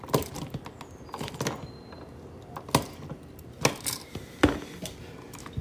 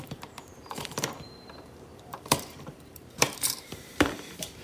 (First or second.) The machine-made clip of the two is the second